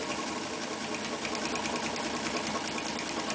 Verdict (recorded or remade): recorded